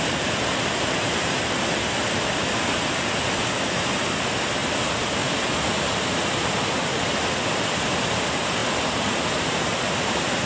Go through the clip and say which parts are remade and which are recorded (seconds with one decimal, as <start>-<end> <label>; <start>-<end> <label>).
0.0-8.6 remade; 8.6-9.2 recorded; 9.2-10.5 remade